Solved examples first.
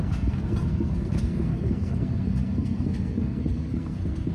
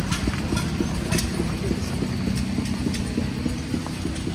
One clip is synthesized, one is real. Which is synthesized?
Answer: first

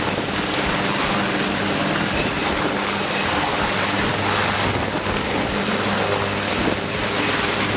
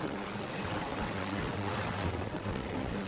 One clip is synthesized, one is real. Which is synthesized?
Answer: second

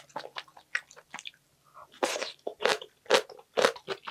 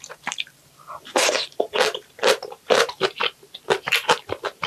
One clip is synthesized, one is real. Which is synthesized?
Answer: second